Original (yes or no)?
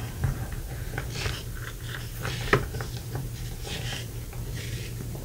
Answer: yes